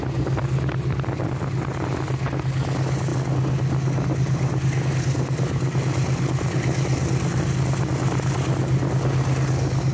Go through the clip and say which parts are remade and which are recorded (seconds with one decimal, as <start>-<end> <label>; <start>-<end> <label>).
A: 0.0-9.9 recorded